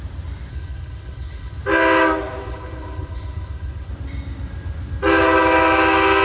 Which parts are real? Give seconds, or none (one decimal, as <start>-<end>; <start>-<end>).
0.0-0.5; 1.6-2.4; 3.9-6.2